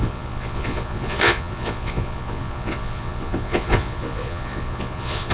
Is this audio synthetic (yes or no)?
yes